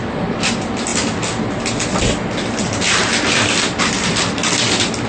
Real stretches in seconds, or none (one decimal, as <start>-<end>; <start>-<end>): 0.0-5.1